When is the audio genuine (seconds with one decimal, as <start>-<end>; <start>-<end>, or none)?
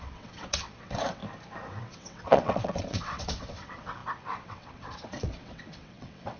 1.2-1.8